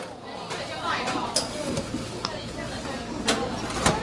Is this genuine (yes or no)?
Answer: yes